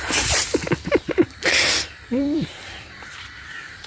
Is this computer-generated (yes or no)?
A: yes